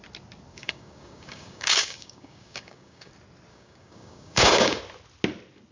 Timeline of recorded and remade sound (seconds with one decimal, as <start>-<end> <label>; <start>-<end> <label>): 0.0-0.5 recorded; 0.5-3.1 remade; 3.1-3.5 recorded; 3.5-4.8 remade; 4.8-5.7 recorded